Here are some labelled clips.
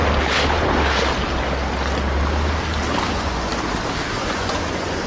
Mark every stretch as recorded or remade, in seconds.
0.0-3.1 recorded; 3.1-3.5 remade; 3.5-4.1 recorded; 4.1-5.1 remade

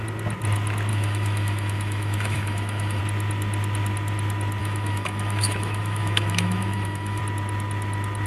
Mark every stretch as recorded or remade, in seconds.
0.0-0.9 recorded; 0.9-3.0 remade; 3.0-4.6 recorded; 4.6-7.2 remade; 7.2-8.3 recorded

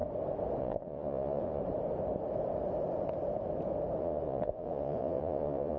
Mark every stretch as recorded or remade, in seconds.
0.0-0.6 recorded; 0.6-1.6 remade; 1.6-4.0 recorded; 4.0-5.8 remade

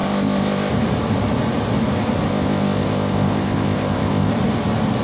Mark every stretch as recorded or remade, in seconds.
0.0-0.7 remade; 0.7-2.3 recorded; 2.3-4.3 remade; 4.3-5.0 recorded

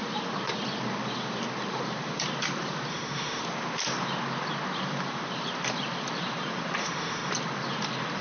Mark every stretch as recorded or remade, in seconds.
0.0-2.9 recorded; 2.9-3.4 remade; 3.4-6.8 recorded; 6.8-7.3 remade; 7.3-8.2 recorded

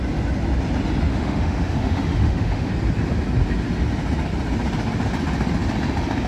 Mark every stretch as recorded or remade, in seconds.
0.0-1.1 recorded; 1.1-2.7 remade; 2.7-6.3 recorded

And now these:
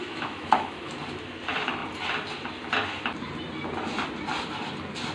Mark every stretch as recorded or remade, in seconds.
0.0-0.9 remade; 0.9-5.1 recorded